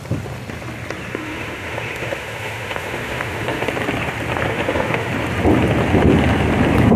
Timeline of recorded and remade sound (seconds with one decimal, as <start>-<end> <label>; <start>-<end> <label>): 0.0-1.1 recorded; 1.1-3.7 remade; 3.7-4.5 recorded; 4.5-5.1 remade; 5.1-7.0 recorded